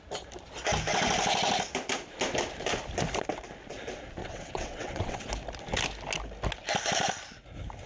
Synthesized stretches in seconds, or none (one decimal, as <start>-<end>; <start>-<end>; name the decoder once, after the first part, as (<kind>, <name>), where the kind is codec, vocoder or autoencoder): 4.2-5.2 (vocoder, WaveNeXt)